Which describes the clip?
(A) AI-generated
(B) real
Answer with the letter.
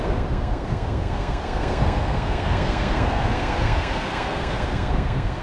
A